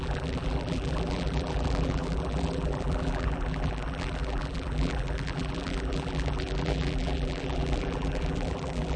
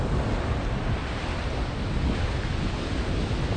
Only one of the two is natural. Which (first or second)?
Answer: second